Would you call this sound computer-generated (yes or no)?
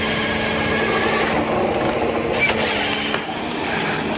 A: no